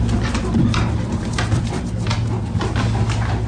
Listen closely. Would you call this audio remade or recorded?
recorded